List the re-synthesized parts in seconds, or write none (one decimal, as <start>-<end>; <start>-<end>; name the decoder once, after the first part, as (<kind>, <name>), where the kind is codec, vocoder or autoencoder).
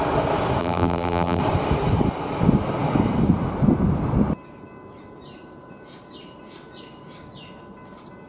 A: 0.6-1.4 (vocoder, BigVGAN v2)